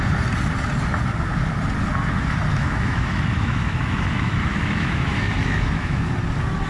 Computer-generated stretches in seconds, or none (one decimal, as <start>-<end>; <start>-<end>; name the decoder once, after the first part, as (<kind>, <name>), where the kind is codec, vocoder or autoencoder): 2.5-6.1 (autoencoder, DAC-VAE)